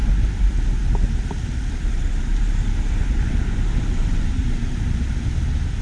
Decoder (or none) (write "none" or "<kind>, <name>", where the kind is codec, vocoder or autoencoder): vocoder, BigVGAN v2